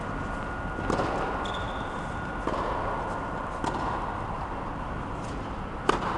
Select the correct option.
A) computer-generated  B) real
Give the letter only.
B